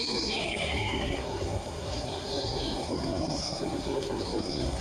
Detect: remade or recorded remade